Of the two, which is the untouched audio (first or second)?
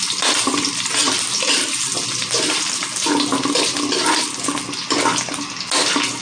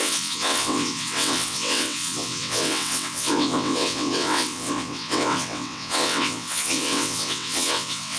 first